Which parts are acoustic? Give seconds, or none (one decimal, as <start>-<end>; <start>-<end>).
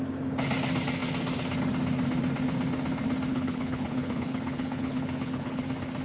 0.0-3.3; 5.6-6.0